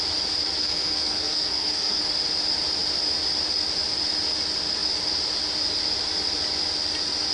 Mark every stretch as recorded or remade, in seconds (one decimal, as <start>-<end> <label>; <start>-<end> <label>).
0.0-0.6 recorded; 0.6-2.0 remade; 2.0-7.3 recorded